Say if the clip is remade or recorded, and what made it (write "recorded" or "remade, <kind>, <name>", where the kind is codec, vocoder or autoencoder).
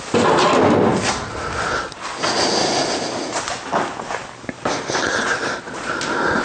recorded